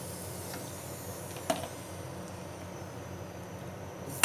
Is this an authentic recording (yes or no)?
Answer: yes